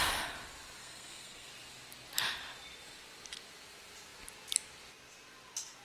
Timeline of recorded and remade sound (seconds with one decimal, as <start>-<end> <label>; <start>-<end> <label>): 0.0-0.8 recorded; 0.8-1.5 remade; 1.5-5.8 recorded